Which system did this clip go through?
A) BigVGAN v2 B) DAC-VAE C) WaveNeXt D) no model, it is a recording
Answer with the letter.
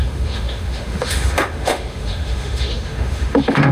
B